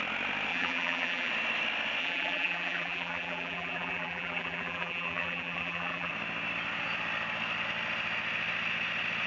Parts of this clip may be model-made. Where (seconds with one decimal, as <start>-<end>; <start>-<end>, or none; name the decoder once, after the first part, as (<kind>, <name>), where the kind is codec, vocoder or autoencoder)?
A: 0.5-1.3 (vocoder, BigVGAN v2); 2.0-6.1